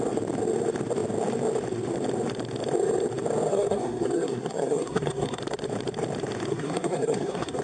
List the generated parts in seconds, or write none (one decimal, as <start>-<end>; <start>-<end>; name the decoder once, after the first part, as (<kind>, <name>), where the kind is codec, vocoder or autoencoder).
3.5-5.4 (codec, SNAC); 6.5-7.6